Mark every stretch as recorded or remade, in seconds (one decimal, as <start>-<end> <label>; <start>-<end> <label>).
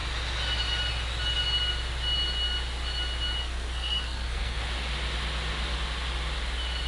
0.0-3.4 recorded; 3.4-4.6 remade; 4.6-6.9 recorded